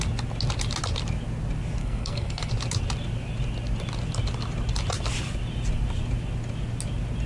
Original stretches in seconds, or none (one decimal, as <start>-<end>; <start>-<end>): 0.0-1.8; 2.5-7.3